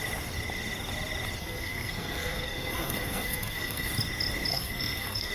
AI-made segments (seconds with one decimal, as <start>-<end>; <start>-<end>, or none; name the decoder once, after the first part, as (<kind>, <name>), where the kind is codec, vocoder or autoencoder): 1.4-3.9 (codec, SNAC); 4.5-5.3